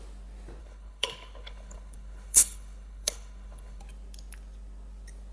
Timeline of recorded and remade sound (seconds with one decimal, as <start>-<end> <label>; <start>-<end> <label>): 0.0-0.6 recorded; 0.6-3.8 remade; 3.8-5.3 recorded